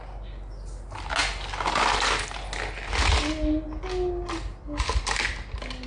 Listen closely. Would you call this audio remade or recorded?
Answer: recorded